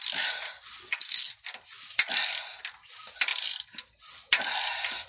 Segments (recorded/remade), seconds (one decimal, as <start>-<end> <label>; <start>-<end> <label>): 0.0-0.8 recorded; 0.8-1.3 remade; 1.3-5.1 recorded